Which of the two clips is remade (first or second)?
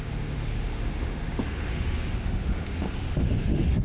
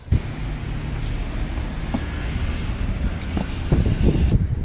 first